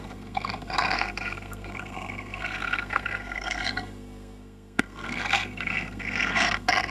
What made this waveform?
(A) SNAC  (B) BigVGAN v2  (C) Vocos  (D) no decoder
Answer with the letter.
A